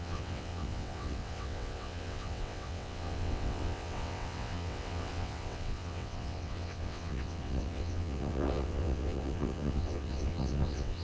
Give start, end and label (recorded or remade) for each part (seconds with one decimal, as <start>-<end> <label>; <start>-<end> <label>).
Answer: 0.0-11.0 remade